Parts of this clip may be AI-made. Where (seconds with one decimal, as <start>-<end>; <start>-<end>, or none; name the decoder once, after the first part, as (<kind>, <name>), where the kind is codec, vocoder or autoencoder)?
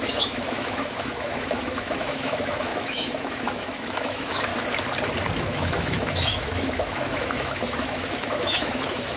0.0-4.5 (autoencoder, DAC-VAE); 5.4-9.2